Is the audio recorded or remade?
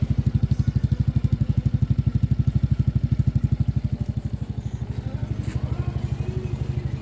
recorded